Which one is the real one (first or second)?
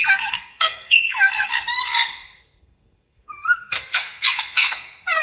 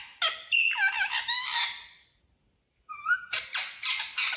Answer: second